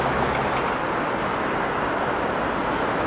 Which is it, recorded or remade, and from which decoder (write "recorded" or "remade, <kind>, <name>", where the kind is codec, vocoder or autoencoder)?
recorded